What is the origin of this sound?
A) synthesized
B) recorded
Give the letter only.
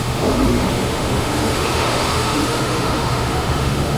A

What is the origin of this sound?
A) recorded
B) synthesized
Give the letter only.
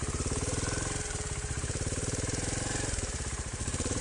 B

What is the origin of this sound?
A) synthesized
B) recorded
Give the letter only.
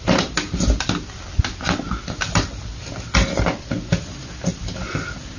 B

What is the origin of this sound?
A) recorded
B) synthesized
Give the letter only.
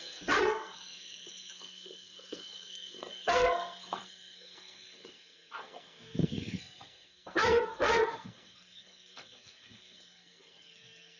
B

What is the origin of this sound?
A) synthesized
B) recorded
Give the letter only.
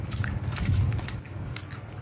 A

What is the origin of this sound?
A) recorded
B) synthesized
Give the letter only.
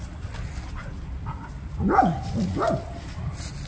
A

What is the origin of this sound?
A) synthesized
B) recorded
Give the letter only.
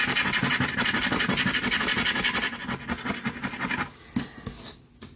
B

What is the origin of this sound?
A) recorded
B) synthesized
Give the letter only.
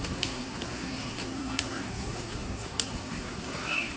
B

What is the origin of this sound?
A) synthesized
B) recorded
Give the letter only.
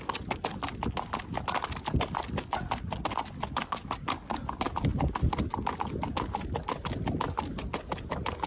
B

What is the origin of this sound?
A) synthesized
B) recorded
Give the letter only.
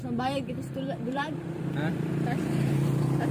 A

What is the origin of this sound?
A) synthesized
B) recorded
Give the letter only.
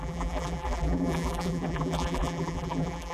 A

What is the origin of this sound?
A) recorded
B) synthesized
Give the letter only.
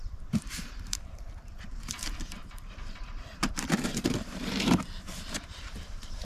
B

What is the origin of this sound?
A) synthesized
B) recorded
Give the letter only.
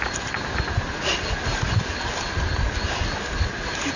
B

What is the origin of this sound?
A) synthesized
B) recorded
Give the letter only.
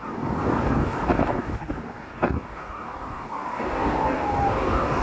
A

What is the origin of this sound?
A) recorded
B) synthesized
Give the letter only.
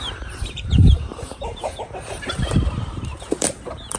B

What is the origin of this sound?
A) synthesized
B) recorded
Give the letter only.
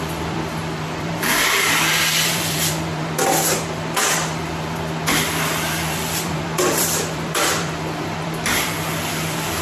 A